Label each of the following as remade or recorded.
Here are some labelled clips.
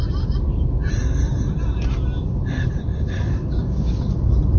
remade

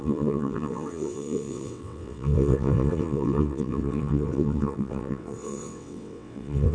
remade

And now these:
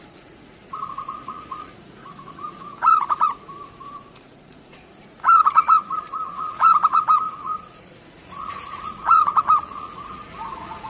remade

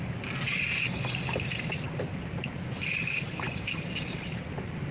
recorded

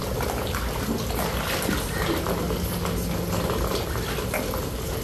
recorded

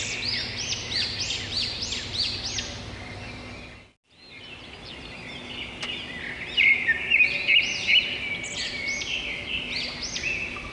recorded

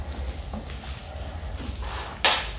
recorded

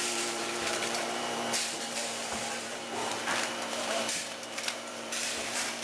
remade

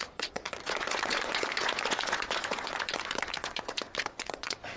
remade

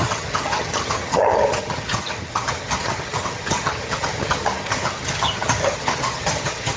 remade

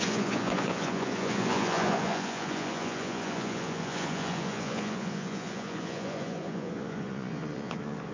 remade